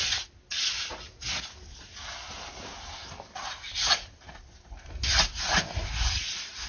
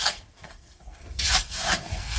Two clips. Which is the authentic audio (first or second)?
first